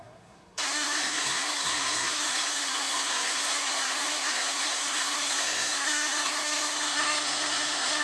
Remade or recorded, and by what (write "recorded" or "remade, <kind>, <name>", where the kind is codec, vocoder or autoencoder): remade, codec, SNAC